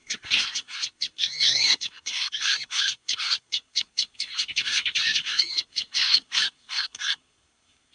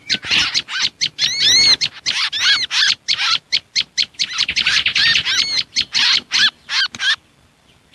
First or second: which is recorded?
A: second